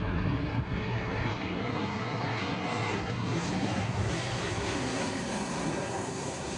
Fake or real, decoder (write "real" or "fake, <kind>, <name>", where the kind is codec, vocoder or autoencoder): fake, codec, SNAC